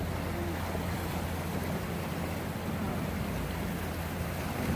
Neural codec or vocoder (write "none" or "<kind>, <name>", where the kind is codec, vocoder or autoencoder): none